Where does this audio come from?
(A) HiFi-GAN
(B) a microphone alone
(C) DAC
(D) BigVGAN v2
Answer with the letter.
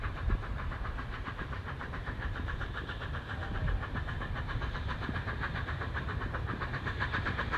D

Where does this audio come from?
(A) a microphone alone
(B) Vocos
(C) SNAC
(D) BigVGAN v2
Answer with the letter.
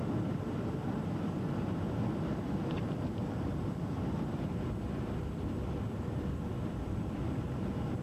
D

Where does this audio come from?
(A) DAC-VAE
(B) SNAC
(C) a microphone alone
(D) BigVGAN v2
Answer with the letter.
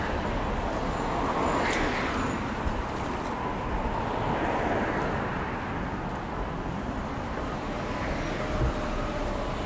C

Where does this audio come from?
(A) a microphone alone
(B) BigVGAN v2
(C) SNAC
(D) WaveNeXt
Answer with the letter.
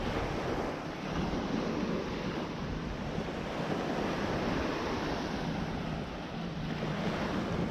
A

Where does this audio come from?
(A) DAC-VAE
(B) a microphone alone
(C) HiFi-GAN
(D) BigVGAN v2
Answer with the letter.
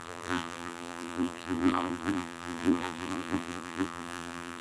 D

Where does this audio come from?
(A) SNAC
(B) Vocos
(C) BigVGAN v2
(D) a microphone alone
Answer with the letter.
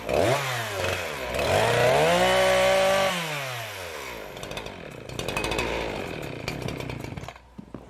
D